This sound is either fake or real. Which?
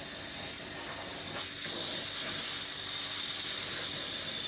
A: real